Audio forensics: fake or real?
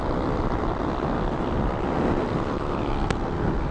real